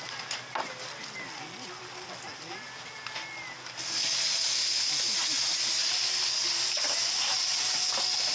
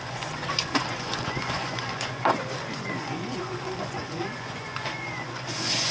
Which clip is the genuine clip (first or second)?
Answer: first